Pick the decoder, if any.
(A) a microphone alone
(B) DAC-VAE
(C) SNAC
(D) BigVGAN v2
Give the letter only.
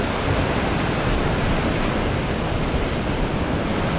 A